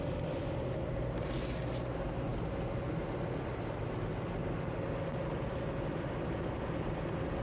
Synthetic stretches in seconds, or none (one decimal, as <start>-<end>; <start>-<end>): none